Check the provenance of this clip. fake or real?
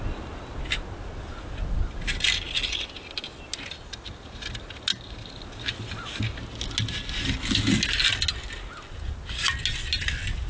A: real